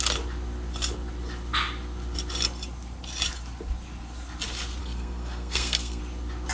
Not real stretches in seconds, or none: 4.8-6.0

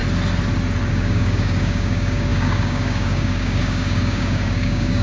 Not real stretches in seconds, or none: 0.9-5.0

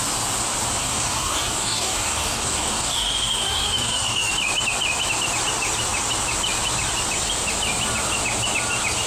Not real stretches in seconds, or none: 0.8-4.3

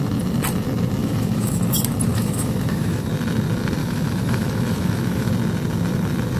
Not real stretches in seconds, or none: 1.0-1.6; 2.1-3.1; 3.8-5.3